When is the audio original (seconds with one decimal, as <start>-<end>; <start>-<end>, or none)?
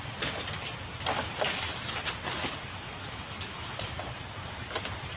0.0-2.7; 3.8-5.2